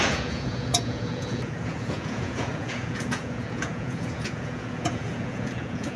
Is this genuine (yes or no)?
no